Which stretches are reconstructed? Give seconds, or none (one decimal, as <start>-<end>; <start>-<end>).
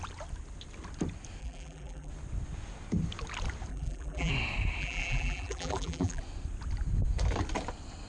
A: 1.4-2.1; 3.7-4.3; 4.8-6.2